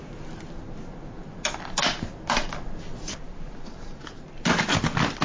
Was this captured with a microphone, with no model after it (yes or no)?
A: yes